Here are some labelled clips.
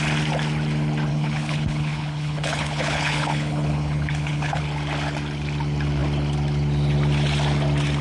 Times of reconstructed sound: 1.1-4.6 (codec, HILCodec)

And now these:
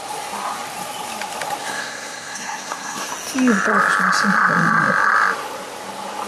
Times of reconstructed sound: 1.6-3.1 (codec, SNAC)

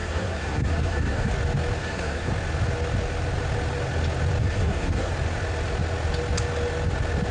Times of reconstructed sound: 0.0-1.3 (codec, SNAC); 1.8-2.3; 4.4-5.1

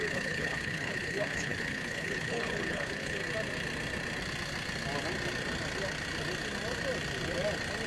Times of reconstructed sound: 0.0-3.2 (codec, HILCodec)

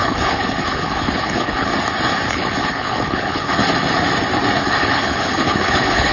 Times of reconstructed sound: 0.0-1.7 (codec, HILCodec); 2.3-3.6; 4.6-6.1

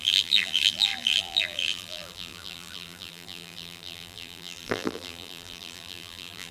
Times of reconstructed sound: 0.0-6.5 (vocoder, BigVGAN v2)